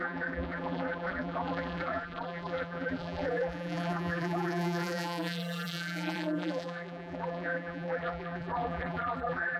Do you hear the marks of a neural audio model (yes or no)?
yes